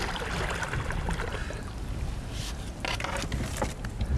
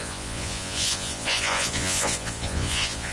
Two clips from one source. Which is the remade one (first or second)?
second